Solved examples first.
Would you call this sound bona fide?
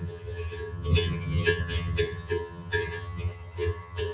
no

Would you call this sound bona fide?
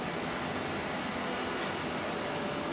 yes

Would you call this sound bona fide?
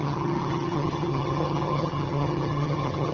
no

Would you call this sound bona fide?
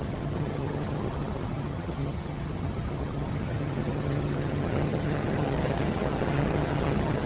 no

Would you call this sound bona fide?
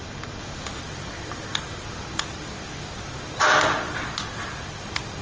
yes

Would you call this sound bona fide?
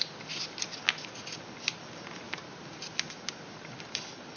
yes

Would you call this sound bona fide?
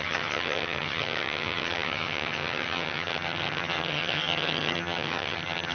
no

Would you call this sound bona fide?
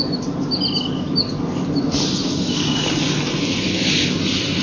yes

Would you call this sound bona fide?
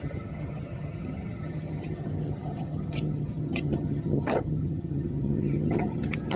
no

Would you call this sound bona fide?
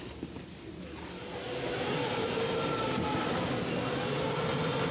yes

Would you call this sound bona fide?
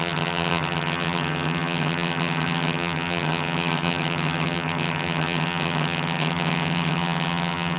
no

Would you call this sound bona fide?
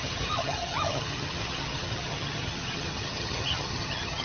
no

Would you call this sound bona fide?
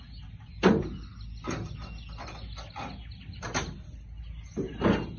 yes